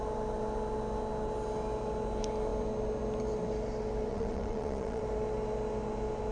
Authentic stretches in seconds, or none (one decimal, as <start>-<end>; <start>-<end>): 0.0-4.1; 5.0-6.3